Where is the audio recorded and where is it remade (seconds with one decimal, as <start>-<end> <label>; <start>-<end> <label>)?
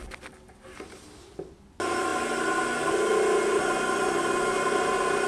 0.0-5.3 recorded